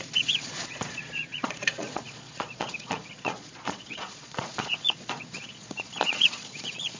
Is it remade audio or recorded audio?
remade